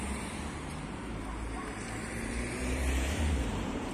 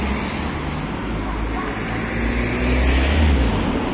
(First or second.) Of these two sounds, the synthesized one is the first